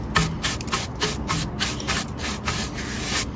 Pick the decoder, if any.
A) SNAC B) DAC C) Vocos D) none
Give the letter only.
D